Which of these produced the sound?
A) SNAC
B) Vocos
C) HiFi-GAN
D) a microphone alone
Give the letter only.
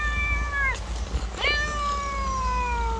D